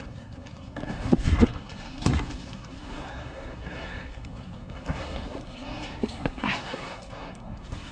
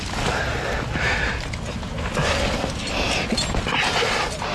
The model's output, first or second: first